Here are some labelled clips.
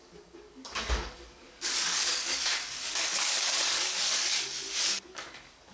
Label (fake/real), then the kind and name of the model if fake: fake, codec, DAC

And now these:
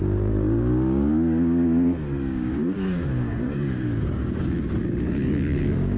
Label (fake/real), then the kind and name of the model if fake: fake, codec, DAC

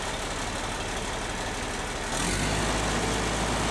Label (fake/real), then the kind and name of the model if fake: real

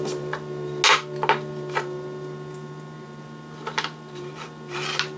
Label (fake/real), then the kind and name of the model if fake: real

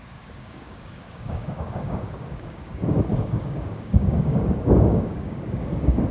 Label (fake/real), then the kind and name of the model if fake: fake, codec, DAC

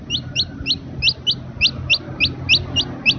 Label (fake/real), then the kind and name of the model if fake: real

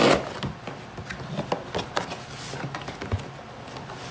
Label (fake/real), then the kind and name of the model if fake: real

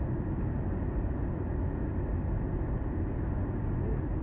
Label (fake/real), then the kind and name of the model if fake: real